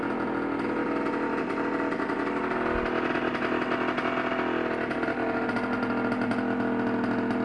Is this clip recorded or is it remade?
recorded